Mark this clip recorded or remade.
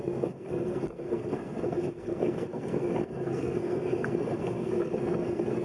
remade